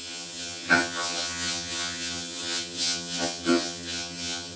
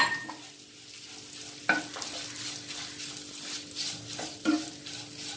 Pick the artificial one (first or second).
first